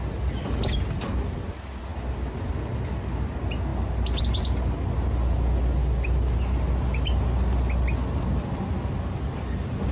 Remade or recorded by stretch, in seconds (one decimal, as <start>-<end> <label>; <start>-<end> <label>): 0.0-9.9 recorded